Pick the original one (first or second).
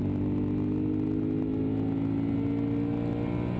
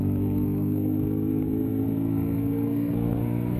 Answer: first